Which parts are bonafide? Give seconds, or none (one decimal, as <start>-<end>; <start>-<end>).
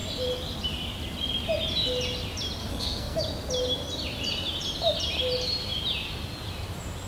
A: 0.0-2.6; 3.2-7.1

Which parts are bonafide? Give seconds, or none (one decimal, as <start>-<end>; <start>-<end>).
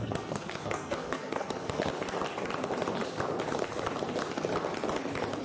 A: 1.9-5.4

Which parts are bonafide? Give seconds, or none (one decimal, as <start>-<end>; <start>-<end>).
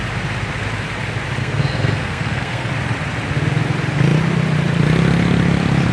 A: 0.0-1.4; 2.7-5.9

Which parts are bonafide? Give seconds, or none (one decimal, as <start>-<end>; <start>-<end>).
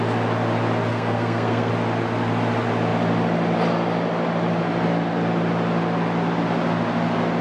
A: 0.0-0.9; 1.7-7.4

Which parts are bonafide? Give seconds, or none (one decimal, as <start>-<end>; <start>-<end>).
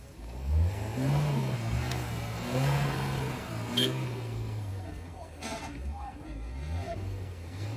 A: none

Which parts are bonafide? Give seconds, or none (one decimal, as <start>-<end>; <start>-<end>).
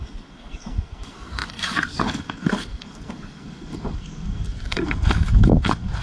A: none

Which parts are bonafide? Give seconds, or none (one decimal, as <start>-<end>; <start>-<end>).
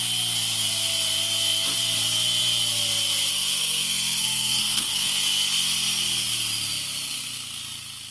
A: 0.0-3.3; 5.2-8.1